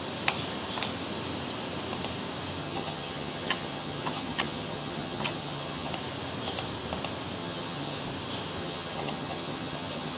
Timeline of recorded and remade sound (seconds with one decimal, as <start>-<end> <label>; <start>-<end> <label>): 0.0-2.6 recorded; 2.6-5.9 remade; 5.9-7.4 recorded; 7.4-8.0 remade; 8.0-8.6 recorded; 8.6-10.2 remade